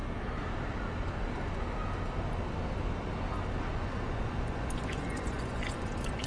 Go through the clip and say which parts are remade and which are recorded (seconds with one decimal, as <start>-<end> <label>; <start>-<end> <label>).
0.0-3.6 recorded; 3.6-6.3 remade